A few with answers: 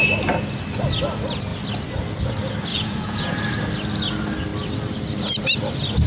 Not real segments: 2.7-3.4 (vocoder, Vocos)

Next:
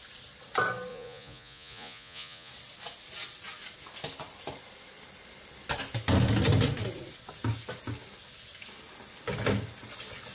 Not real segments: 0.9-2.5 (vocoder, Vocos)